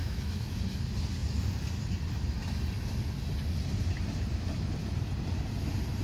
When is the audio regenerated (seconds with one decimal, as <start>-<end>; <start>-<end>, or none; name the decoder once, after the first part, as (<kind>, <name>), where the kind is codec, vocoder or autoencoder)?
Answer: 0.0-0.6 (autoencoder, DAC-VAE)